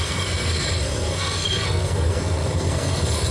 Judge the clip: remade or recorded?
remade